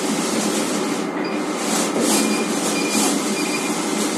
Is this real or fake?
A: real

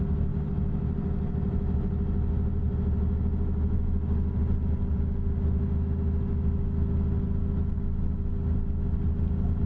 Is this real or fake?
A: real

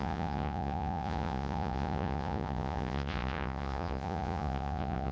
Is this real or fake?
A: fake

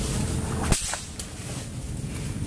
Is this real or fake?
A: real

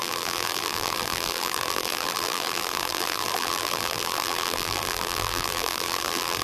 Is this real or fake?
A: fake